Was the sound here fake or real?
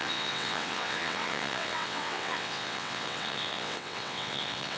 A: fake